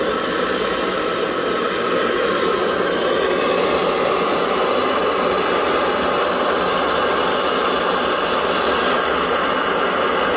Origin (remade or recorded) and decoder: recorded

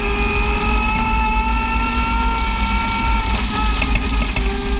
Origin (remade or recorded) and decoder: recorded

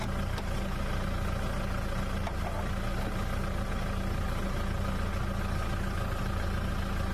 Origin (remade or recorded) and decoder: recorded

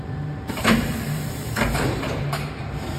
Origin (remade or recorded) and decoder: remade, vocoder, BigVGAN v2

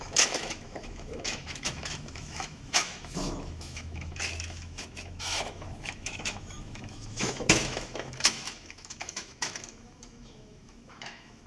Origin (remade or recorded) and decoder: remade, autoencoder, DAC-VAE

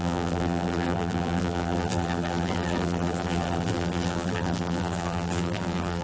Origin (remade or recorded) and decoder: remade, vocoder, BigVGAN v2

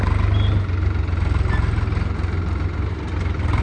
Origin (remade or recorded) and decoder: recorded